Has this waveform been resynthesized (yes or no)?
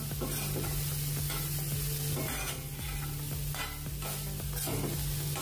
no